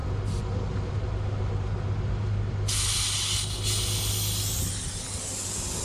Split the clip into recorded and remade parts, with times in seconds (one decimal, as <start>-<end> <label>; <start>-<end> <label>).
0.0-5.8 recorded